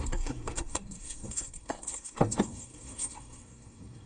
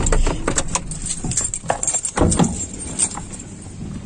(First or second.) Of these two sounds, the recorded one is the second